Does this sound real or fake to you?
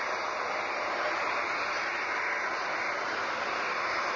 real